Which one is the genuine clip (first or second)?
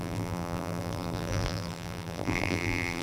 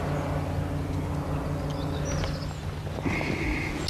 second